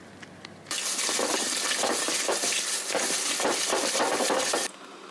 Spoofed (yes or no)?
no